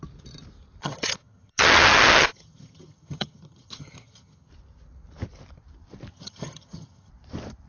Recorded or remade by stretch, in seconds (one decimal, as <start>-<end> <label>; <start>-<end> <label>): 0.0-0.8 recorded; 0.8-4.5 remade; 4.5-6.1 recorded; 6.1-7.1 remade; 7.1-7.7 recorded